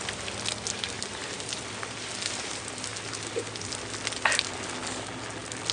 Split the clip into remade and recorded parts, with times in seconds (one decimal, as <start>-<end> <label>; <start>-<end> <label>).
0.0-5.7 recorded